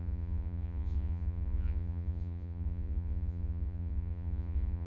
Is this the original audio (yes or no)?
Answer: no